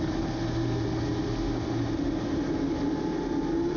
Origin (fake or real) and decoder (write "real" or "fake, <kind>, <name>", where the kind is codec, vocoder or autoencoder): real